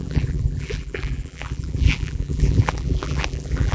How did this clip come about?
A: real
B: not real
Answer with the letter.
B